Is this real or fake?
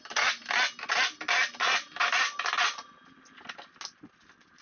real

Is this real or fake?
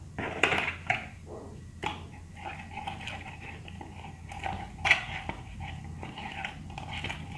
real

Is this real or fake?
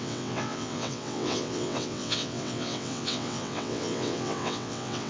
fake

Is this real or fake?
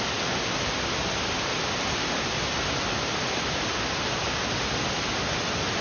real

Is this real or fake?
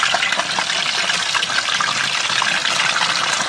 real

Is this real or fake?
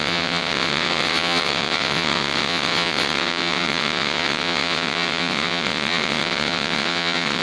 fake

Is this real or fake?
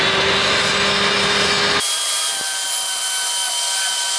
real